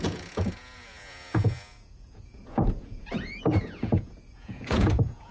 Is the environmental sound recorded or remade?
remade